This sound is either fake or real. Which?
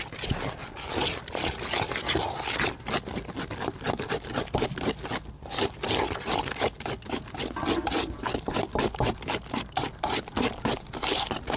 real